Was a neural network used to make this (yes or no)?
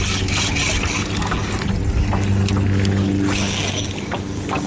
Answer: no